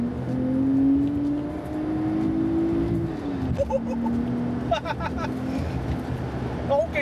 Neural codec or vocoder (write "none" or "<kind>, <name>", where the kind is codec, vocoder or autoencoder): none